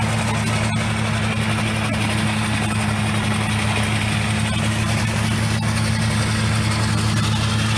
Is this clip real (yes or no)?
yes